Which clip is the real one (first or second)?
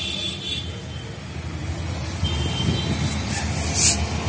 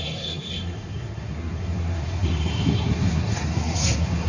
first